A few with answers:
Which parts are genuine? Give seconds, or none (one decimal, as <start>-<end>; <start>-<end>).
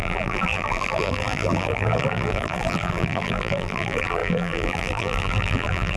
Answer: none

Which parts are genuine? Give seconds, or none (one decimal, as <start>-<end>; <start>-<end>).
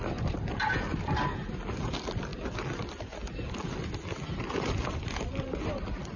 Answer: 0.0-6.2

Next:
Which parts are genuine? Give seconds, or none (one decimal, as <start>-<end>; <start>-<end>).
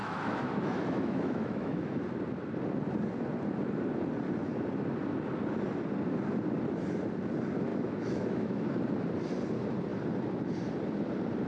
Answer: 2.0-7.7; 8.7-11.5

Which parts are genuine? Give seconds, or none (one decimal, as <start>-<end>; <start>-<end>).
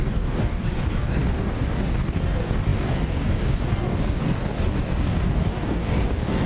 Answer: none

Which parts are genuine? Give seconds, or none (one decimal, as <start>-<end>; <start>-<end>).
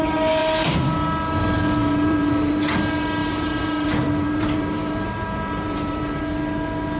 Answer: 0.0-1.8; 2.5-3.2; 6.2-7.0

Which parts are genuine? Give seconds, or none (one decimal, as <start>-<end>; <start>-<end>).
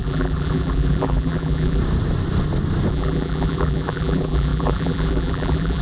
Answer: 1.8-2.9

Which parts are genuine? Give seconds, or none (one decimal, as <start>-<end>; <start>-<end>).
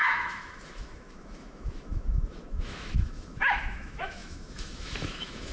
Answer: none